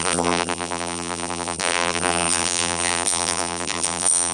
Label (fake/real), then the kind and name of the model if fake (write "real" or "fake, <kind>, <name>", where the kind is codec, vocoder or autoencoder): fake, vocoder, BigVGAN v2